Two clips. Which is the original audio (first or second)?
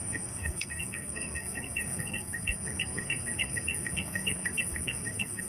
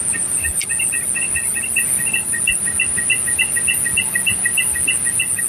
second